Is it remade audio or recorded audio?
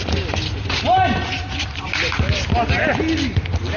recorded